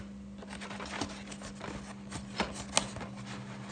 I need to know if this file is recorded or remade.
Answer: recorded